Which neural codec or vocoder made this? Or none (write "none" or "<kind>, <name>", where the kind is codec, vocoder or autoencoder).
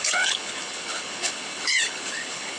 codec, HILCodec